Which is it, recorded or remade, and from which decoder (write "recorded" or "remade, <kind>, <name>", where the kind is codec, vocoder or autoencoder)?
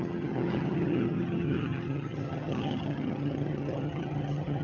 remade, vocoder, HiFi-GAN